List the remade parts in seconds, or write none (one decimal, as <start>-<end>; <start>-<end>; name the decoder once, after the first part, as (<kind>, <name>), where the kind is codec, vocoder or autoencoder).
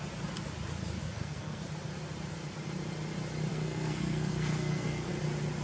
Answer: 1.0-1.6 (codec, SNAC); 3.5-5.1